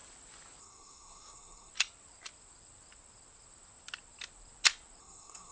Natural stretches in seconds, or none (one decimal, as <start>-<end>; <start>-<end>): 0.0-0.6; 1.7-5.0